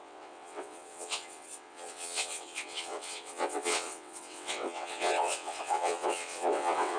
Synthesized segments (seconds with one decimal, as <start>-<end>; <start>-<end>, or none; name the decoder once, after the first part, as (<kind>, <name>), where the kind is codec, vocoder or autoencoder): 0.0-7.0 (vocoder, WaveNeXt)